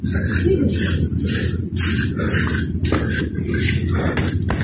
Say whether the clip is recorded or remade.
recorded